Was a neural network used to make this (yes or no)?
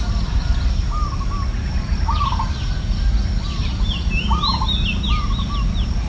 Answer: no